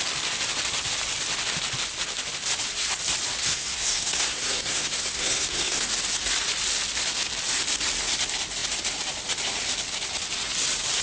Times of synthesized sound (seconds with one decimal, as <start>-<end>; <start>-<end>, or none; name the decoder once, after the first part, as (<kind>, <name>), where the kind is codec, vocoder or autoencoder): 3.4-5.9 (codec, SNAC)